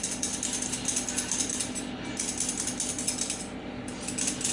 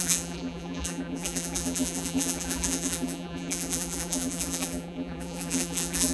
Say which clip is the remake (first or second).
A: second